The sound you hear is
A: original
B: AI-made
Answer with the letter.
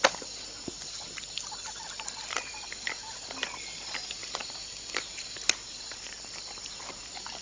A